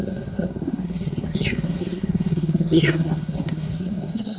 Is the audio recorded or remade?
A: remade